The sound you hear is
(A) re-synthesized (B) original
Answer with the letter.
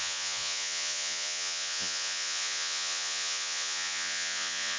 A